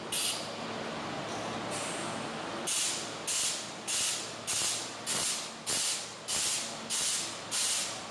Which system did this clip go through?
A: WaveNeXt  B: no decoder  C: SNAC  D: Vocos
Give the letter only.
B